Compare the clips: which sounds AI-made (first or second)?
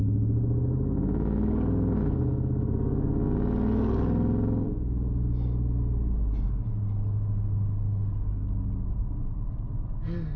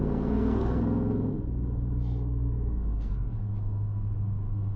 second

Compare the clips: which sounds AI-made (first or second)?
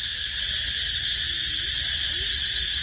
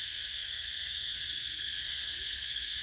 second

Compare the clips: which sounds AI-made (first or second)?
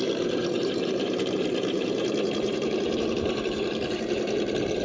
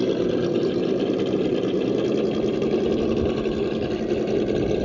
first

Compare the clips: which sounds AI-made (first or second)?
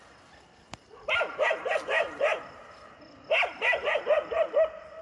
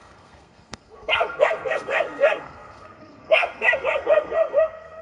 second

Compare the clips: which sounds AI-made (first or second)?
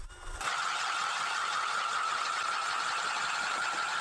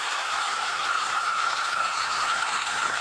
second